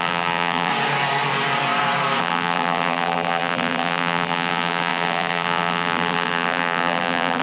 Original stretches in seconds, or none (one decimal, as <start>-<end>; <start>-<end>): 0.7-2.2